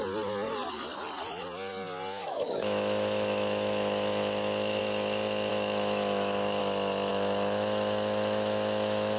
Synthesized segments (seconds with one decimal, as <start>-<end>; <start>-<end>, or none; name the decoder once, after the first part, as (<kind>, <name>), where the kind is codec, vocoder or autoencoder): 2.2-4.8 (autoencoder, DAC-VAE); 5.5-6.6; 7.1-9.2